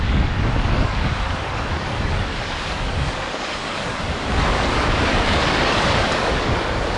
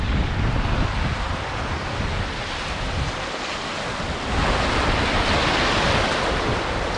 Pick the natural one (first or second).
second